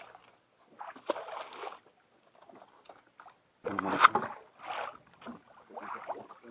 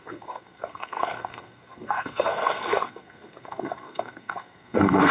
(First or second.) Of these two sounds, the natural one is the first